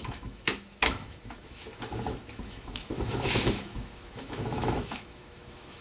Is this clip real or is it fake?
fake